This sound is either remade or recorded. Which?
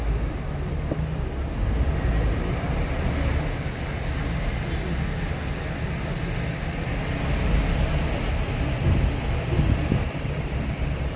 recorded